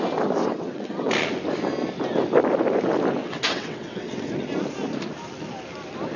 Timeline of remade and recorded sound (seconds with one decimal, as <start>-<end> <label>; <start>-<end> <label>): 0.0-0.4 recorded; 0.4-1.1 remade; 1.1-3.2 recorded; 3.2-4.3 remade; 4.3-6.2 recorded